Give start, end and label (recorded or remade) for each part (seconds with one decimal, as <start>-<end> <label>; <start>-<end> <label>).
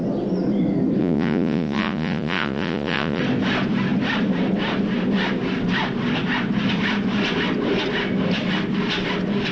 0.0-1.0 recorded; 1.0-3.2 remade; 3.2-9.5 recorded